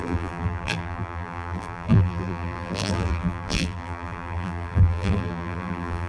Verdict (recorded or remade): remade